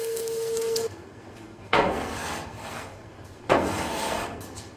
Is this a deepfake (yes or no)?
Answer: yes